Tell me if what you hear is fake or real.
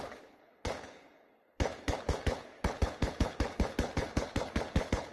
fake